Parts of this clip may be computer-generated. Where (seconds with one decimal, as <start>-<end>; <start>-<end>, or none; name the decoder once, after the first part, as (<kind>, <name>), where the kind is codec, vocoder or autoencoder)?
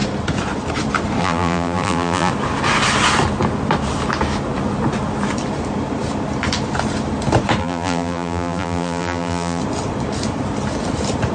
1.2-2.3 (vocoder, BigVGAN v2); 7.6-9.6